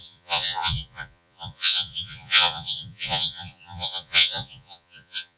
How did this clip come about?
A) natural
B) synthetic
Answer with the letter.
B